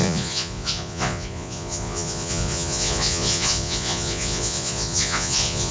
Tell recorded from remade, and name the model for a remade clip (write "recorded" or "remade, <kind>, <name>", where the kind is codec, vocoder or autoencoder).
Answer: remade, vocoder, Vocos